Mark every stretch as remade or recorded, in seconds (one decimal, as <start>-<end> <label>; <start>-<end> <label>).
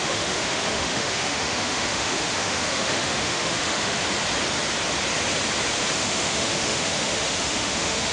0.0-4.0 remade; 4.0-5.9 recorded; 5.9-8.1 remade